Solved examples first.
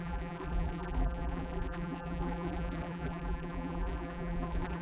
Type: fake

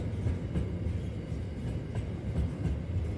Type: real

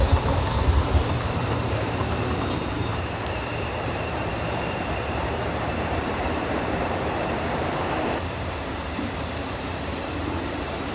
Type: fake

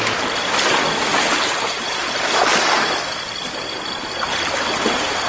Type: real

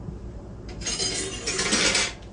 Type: fake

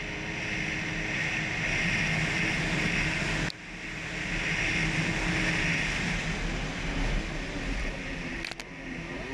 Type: real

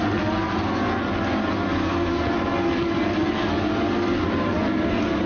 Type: real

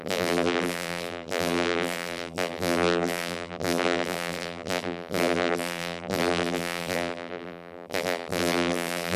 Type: fake